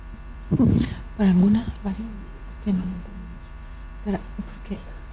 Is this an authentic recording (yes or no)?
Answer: no